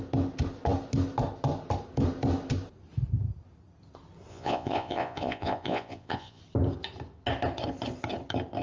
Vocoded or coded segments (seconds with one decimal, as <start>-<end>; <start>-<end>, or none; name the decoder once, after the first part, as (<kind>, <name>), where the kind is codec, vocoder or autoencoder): 4.3-6.4 (vocoder, Vocos)